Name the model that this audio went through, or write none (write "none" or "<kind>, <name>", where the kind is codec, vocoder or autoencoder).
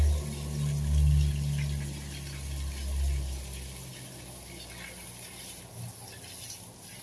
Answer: none